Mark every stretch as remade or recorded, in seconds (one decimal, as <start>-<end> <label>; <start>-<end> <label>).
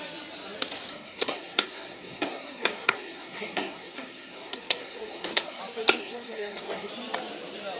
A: 0.0-0.9 recorded; 0.9-5.6 remade; 5.6-6.0 recorded; 6.0-6.9 remade; 6.9-7.8 recorded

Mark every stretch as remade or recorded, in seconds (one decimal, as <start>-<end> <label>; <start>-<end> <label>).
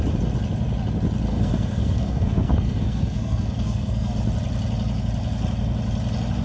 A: 0.0-1.3 recorded; 1.3-4.1 remade; 4.1-6.4 recorded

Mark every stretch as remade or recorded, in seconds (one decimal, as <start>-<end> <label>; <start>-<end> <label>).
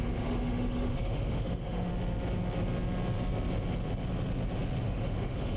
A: 0.0-1.9 remade; 1.9-4.8 recorded; 4.8-5.6 remade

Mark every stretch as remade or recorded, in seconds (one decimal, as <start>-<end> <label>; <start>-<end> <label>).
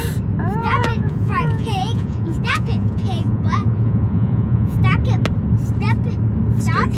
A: 0.0-0.6 recorded; 0.6-4.8 remade; 4.8-7.0 recorded